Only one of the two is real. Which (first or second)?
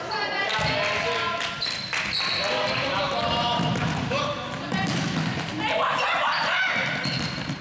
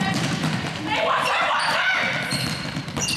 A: first